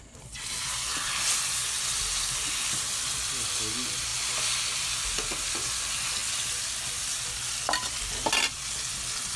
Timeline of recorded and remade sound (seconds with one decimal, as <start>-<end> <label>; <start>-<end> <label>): 0.0-9.4 recorded